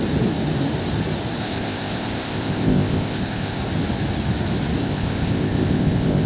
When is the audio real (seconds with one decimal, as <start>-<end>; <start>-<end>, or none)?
0.0-1.4; 3.6-4.8